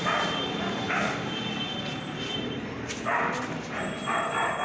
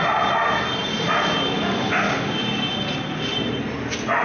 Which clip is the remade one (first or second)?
first